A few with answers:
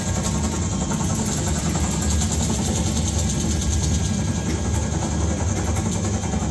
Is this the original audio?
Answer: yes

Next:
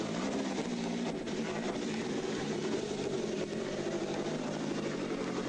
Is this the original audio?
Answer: yes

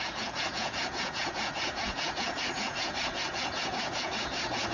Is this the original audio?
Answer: no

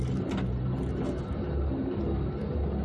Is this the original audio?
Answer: yes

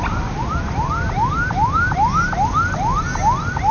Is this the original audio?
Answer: yes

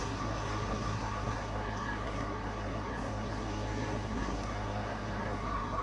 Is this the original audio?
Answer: no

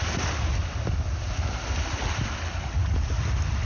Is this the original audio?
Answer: yes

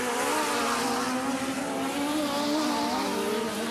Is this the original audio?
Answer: yes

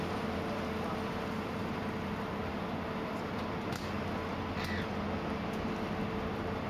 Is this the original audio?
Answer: yes